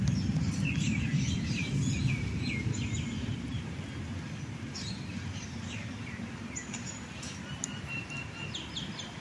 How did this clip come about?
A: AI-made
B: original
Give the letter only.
B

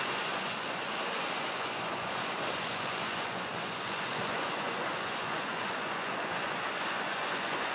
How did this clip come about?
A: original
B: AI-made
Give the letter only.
B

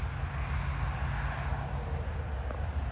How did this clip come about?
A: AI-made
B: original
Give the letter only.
B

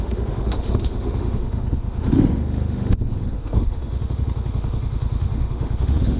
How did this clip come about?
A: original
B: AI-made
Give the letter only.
B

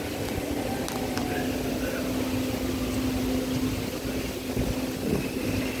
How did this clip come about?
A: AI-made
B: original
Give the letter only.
B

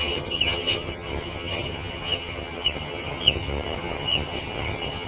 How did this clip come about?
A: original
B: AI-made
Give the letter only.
B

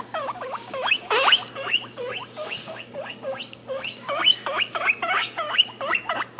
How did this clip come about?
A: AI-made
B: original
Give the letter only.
A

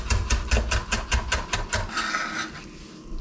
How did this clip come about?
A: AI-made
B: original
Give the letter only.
B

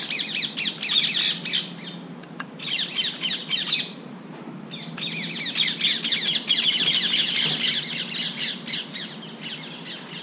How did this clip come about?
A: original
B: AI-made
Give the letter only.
A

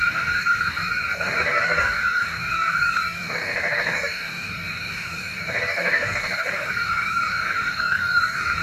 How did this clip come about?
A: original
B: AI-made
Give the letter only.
B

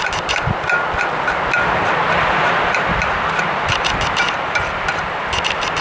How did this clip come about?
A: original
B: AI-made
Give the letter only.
A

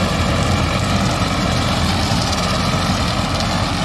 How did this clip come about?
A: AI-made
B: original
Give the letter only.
B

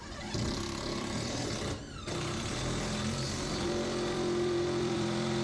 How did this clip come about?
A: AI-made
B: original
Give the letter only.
A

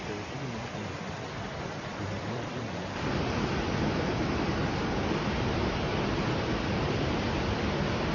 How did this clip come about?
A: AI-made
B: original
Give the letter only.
B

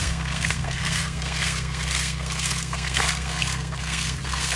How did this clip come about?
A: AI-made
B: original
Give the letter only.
A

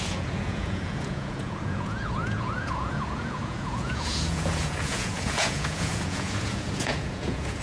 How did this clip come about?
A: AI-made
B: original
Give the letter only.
A